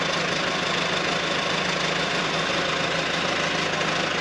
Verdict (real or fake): real